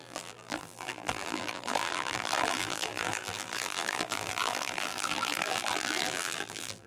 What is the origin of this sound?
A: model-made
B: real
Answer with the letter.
A